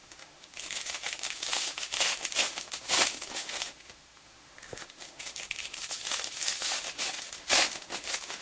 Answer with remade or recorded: remade